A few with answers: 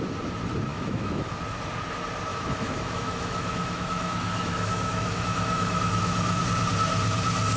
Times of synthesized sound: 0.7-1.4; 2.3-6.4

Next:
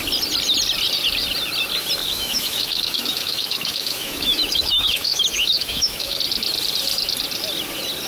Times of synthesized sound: 2.0-6.2

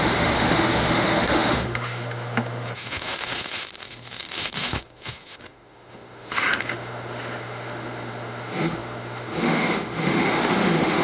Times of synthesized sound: 0.0-11.0

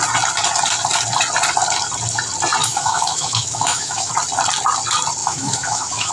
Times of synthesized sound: 2.6-4.1; 5.2-6.1

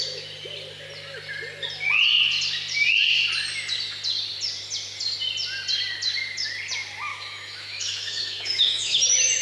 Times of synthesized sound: 7.1-9.0